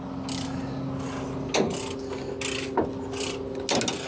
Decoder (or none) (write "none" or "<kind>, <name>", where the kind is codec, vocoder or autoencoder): none